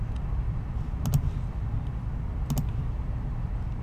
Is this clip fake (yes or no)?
no